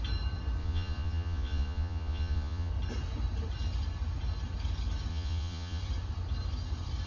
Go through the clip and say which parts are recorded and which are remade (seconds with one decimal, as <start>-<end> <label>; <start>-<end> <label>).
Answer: 0.0-0.6 recorded; 0.6-2.7 remade; 2.7-5.1 recorded; 5.1-5.8 remade; 5.8-7.1 recorded